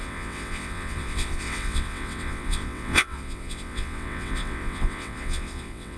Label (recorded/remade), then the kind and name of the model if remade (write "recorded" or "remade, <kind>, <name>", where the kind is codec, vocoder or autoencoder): remade, vocoder, WaveNeXt